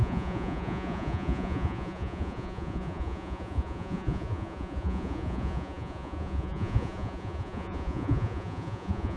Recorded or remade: remade